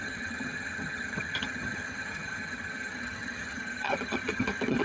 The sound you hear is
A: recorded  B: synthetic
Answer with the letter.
B